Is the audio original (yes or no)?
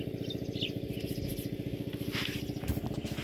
yes